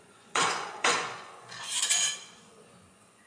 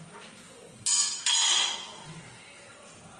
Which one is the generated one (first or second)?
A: first